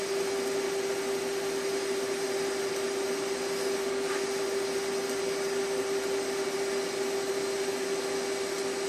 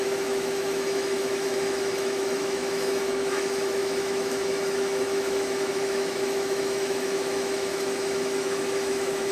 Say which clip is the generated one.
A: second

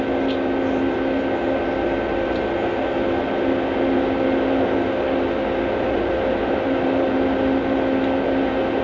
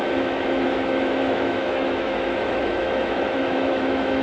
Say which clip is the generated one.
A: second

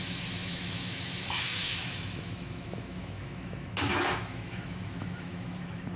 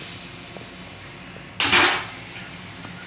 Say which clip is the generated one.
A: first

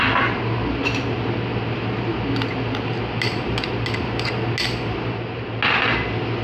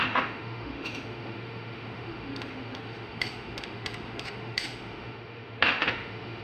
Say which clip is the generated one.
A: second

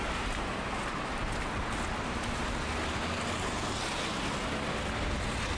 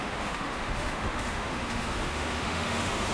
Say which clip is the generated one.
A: second